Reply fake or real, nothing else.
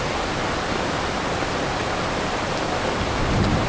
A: real